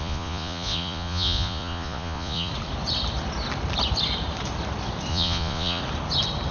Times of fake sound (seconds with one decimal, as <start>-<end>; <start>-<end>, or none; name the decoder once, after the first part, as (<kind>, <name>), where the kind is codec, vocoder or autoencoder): 0.0-2.5 (vocoder, Vocos); 5.1-5.8